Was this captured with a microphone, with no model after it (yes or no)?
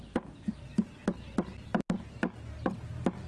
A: yes